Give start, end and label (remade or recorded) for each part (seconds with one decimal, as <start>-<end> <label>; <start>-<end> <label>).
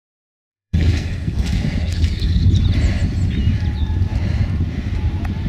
0.0-0.5 recorded; 0.5-2.5 remade; 2.5-5.5 recorded